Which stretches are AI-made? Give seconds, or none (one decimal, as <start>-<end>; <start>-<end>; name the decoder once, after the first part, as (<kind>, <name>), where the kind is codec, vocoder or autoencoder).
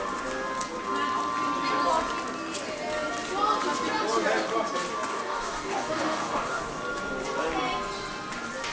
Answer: 5.1-6.6 (codec, DAC)